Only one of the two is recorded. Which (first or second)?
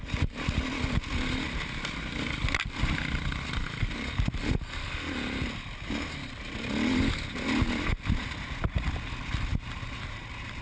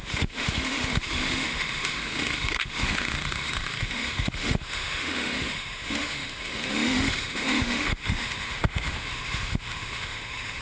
first